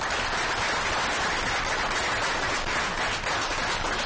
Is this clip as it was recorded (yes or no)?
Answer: yes